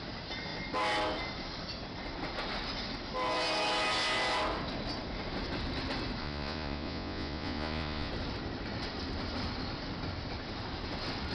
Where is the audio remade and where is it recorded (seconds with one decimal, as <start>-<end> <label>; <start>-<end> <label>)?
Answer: 0.0-6.2 recorded; 6.2-8.1 remade; 8.1-11.3 recorded